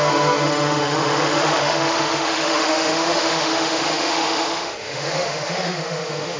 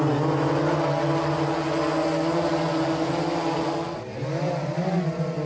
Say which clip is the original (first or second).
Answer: second